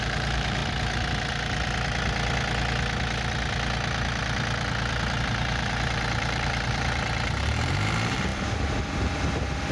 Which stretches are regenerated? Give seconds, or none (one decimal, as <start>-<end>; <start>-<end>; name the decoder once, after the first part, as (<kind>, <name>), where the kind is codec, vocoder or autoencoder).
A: 0.0-0.6 (vocoder, BigVGAN v2); 5.2-9.7